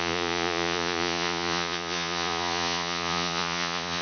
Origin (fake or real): fake